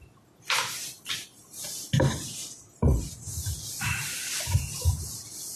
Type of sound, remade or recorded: recorded